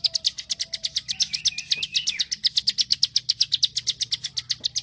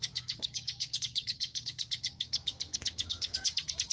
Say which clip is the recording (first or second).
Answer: first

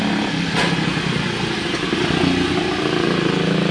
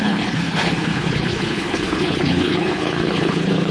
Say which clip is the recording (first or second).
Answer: first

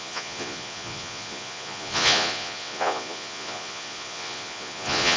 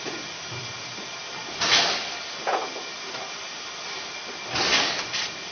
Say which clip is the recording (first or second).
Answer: second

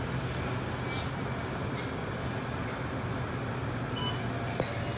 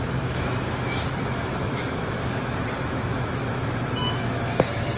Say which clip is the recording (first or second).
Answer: first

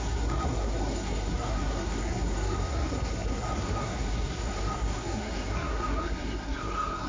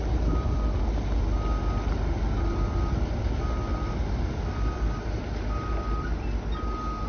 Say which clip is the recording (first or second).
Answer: second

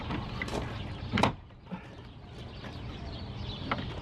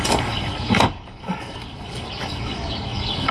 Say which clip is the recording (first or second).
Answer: first